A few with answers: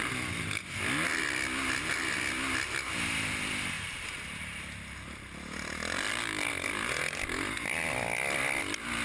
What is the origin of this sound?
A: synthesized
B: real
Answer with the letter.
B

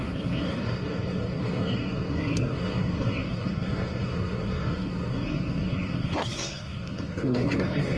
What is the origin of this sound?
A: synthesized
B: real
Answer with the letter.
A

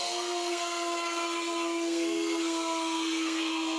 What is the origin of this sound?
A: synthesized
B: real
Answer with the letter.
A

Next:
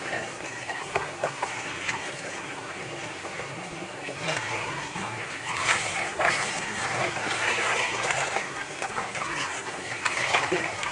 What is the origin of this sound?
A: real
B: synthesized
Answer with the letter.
B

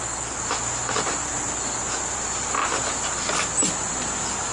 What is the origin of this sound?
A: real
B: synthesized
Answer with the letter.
A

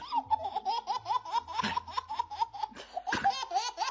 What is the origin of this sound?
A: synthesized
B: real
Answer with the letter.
B